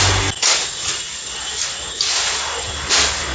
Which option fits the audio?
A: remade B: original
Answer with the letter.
B